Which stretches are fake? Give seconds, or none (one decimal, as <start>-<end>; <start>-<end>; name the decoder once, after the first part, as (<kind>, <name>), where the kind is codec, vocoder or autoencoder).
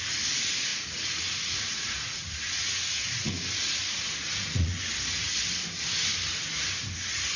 0.7-3.3 (vocoder, Vocos); 3.9-4.9